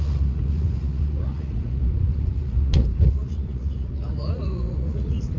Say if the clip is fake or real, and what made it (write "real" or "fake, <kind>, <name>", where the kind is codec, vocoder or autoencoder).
fake, vocoder, Vocos